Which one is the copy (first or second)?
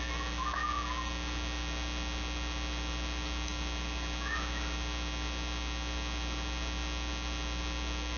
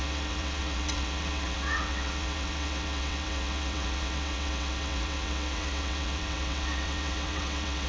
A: second